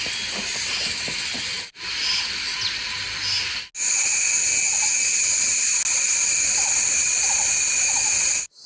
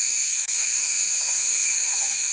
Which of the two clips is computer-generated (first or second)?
second